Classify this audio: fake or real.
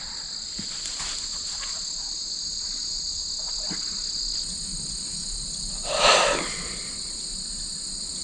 real